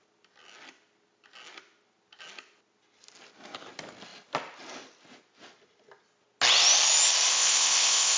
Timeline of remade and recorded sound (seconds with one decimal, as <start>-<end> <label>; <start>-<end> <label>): 0.0-7.3 recorded; 7.3-8.2 remade